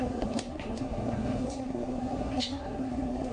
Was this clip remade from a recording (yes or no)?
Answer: yes